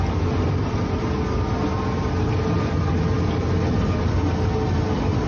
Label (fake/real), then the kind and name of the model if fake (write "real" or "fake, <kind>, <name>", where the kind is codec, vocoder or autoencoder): real